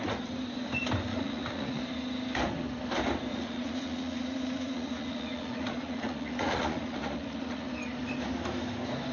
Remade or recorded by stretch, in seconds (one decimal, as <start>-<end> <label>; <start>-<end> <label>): 0.0-1.1 recorded; 1.1-1.8 remade; 1.8-3.3 recorded; 3.3-7.7 remade; 7.7-9.1 recorded